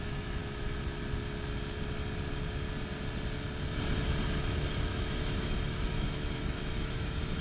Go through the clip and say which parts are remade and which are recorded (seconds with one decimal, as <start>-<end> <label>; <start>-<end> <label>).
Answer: 0.0-0.4 remade; 0.4-4.4 recorded; 4.4-7.4 remade